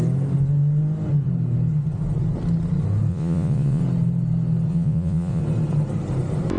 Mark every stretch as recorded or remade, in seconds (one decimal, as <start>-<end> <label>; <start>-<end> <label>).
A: 0.0-3.1 recorded; 3.1-3.8 remade; 3.8-4.7 recorded; 4.7-5.4 remade; 5.4-6.6 recorded